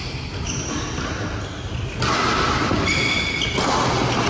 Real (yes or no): yes